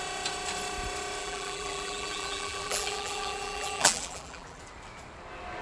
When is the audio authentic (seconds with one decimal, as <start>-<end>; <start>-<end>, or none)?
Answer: 0.0-1.2; 4.6-5.6